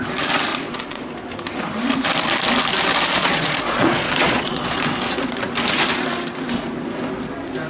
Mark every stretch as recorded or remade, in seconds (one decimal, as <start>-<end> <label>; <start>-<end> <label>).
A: 0.0-0.5 recorded; 0.5-1.0 remade; 1.0-3.2 recorded; 3.2-5.3 remade; 5.3-7.7 recorded